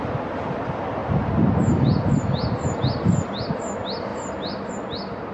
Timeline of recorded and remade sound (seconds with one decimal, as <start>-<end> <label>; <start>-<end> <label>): 0.0-5.3 recorded